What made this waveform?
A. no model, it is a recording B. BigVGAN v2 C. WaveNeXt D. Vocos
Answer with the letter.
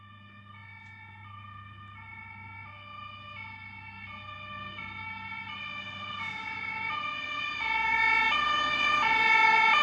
A